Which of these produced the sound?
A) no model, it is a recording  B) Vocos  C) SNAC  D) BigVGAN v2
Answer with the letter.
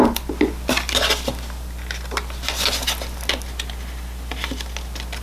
A